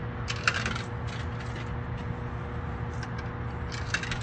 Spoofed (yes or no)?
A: no